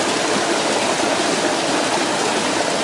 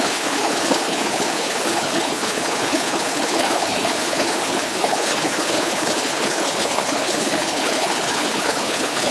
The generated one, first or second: second